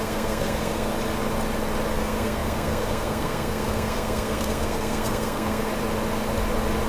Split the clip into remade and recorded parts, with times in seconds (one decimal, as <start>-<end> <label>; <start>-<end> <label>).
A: 0.0-0.9 remade; 0.9-1.9 recorded; 1.9-5.7 remade; 5.7-6.9 recorded